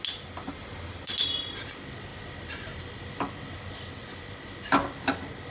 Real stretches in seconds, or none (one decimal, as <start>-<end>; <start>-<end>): 0.0-5.5